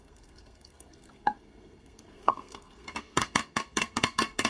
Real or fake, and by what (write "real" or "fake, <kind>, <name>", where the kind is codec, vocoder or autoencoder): fake, codec, SNAC